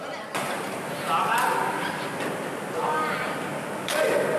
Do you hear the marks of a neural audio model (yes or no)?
no